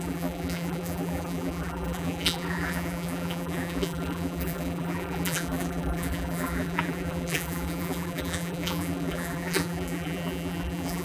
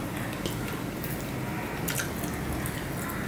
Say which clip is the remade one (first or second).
first